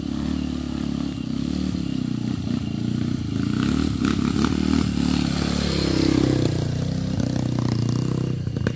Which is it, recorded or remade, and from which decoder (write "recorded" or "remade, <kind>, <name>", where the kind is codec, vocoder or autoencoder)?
recorded